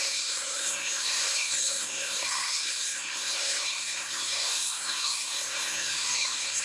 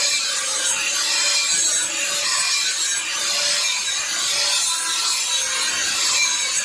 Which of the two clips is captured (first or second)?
second